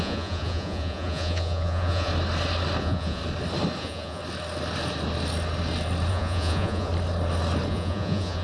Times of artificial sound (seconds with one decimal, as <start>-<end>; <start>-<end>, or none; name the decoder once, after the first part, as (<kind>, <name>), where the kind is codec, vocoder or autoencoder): 0.0-2.1 (vocoder, Vocos); 2.8-3.2; 3.8-4.2; 6.1-6.9; 7.7-8.4